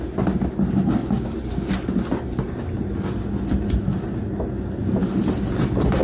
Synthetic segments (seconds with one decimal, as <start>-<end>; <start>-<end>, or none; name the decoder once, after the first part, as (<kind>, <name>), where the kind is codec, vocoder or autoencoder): none